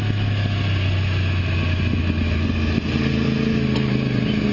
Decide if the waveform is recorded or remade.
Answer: recorded